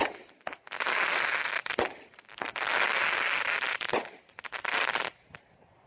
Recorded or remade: recorded